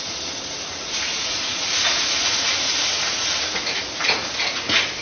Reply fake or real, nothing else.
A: fake